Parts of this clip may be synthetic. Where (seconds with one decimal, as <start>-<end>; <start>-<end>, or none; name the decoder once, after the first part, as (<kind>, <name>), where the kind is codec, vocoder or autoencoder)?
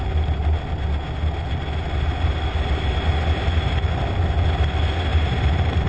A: none